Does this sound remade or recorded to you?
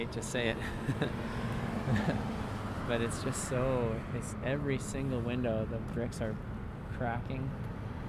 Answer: recorded